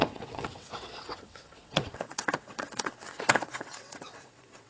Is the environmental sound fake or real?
fake